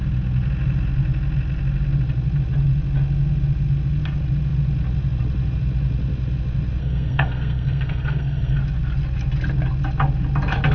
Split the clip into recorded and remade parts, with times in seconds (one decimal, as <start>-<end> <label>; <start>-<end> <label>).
0.0-6.8 recorded; 6.8-8.6 remade; 8.6-10.7 recorded